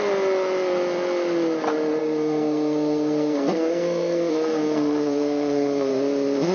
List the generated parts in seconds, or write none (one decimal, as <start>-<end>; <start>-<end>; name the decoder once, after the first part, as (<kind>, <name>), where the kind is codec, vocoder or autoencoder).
2.0-5.9 (codec, SNAC)